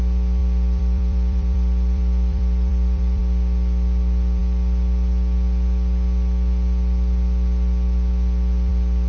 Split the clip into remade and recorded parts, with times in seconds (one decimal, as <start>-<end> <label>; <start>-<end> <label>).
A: 0.0-0.4 recorded; 0.4-3.2 remade; 3.2-9.1 recorded